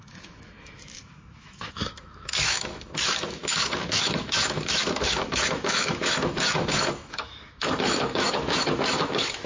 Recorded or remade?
remade